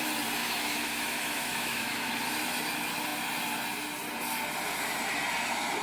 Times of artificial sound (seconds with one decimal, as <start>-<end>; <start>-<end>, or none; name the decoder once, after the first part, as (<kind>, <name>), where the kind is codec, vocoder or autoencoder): 0.4-2.1 (autoencoder, DAC-VAE)